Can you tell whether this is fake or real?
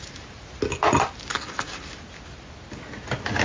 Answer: real